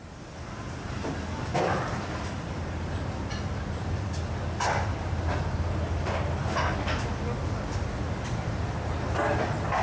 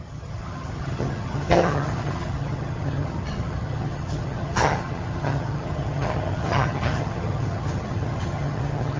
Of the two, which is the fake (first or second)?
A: second